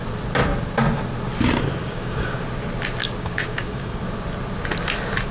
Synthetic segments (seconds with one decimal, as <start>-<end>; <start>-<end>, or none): 1.8-2.4; 3.0-4.0